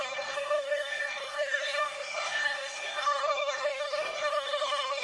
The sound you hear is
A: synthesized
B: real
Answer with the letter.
A